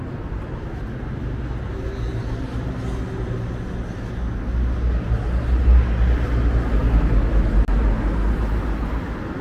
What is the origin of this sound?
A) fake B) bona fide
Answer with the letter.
B